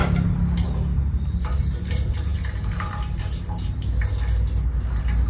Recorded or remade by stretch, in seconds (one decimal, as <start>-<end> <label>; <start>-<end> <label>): 0.0-5.3 recorded